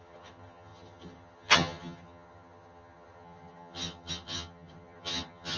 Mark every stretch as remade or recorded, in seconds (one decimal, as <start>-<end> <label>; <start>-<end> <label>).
0.0-5.6 remade